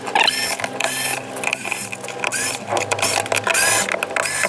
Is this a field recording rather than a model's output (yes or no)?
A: yes